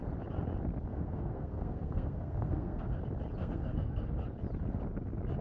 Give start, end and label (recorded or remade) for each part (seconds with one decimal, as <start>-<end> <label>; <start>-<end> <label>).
0.0-0.9 recorded; 0.9-3.0 remade; 3.0-3.4 recorded; 3.4-4.1 remade; 4.1-5.4 recorded